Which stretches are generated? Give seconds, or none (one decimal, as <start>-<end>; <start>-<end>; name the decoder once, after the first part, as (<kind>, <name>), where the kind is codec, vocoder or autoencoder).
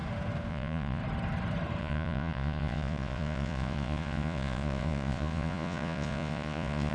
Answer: 0.5-1.0 (vocoder, Vocos); 1.8-6.9